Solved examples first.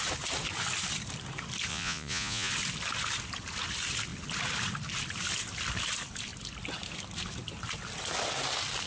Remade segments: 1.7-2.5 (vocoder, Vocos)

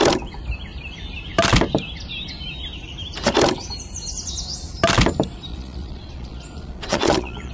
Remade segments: 5.5-7.5 (vocoder, Vocos)